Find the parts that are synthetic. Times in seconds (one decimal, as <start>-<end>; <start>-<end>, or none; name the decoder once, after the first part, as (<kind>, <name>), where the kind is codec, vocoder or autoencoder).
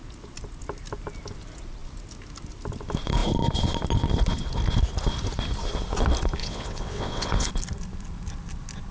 6.4-7.5 (vocoder, WaveNeXt)